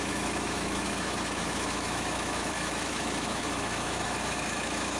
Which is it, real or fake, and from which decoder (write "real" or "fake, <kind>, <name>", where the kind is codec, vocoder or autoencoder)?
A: fake, autoencoder, DAC-VAE